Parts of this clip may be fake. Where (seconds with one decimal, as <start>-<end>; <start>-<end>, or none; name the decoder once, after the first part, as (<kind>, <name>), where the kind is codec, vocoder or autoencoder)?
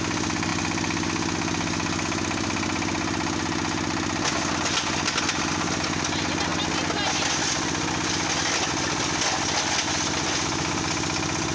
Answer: none